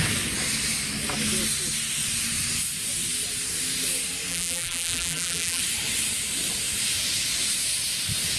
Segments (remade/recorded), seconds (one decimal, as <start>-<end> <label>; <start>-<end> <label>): 0.0-4.3 recorded; 4.3-5.6 remade; 5.6-8.4 recorded